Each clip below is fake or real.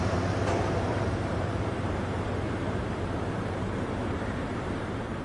fake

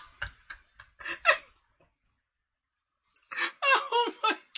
real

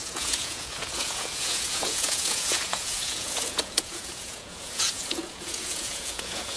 fake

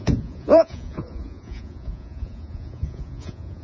fake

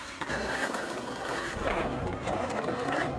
fake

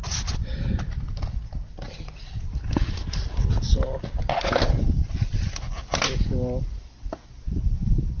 real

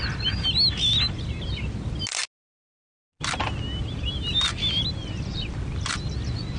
real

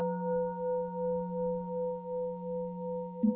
fake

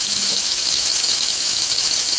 fake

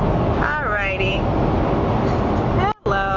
real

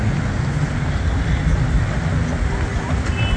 real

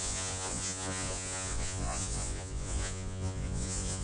fake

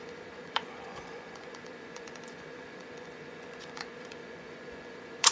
fake